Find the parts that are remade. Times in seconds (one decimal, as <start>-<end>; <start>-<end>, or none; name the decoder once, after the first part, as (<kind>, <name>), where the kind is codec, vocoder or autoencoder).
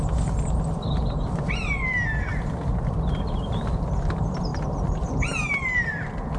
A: none